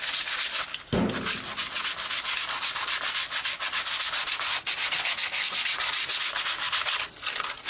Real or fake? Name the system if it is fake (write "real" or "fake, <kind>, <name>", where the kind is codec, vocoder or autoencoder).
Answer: real